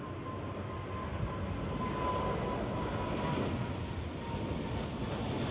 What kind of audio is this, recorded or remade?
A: recorded